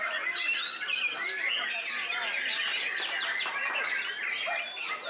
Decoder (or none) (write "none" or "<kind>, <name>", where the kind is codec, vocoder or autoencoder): none